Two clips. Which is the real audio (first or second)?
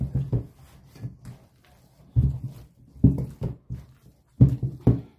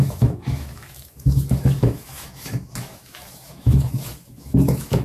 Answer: first